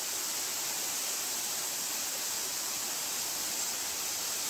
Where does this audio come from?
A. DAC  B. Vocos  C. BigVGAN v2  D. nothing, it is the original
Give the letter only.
C